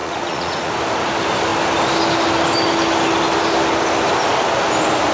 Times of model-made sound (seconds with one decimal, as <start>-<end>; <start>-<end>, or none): 0.0-0.7